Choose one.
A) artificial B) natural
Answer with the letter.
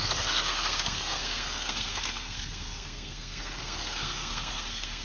A